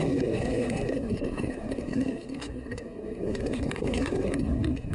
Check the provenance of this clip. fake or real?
fake